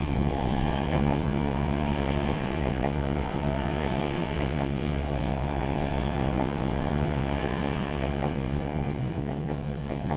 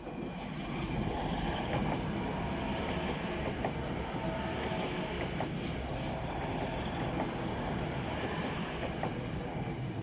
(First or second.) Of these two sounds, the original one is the second